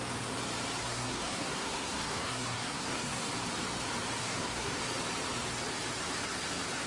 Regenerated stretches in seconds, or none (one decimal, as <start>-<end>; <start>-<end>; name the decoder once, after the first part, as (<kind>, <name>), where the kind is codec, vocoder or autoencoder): 0.8-3.3 (codec, SNAC); 4.2-4.8